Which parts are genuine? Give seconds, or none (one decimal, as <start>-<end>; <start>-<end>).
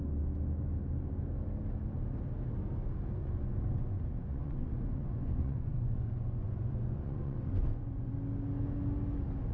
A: 0.0-3.2; 8.1-9.5